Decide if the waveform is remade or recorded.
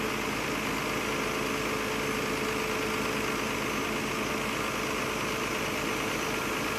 recorded